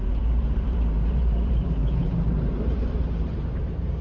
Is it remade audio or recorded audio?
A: remade